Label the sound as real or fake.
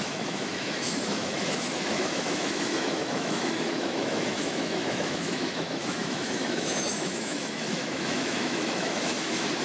fake